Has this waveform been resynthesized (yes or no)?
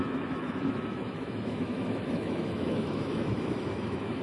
yes